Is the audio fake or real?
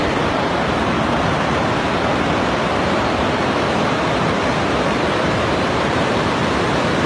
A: fake